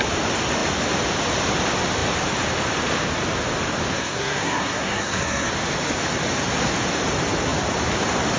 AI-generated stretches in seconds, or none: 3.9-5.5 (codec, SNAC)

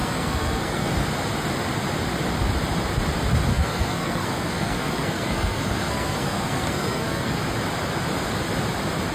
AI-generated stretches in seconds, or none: 0.0-0.9 (codec, SNAC); 3.5-7.4

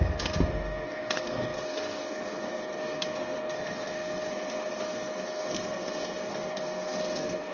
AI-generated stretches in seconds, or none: 0.0-7.5 (codec, SNAC)

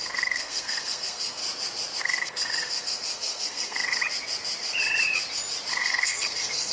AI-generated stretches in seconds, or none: 0.0-1.4 (codec, SNAC); 2.0-4.0; 5.7-6.7

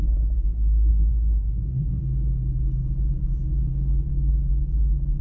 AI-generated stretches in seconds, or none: 0.9-2.0 (codec, SNAC)

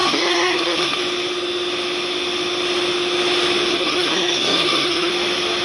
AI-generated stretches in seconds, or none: 0.0-1.0 (codec, SNAC); 3.7-5.1

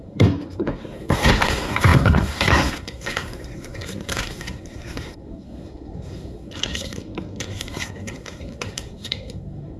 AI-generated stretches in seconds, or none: 0.0-9.8 (codec, SNAC)